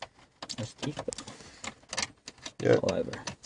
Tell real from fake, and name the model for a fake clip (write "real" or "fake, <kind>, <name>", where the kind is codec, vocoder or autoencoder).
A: real